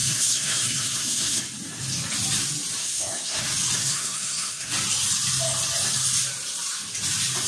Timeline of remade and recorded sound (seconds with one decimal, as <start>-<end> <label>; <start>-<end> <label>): 0.0-1.4 remade; 1.4-2.8 recorded; 2.8-3.4 remade; 3.4-3.8 recorded; 3.8-4.7 remade; 4.7-7.5 recorded